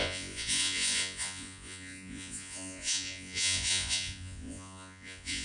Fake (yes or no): yes